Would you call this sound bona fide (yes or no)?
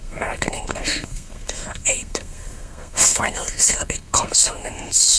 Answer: no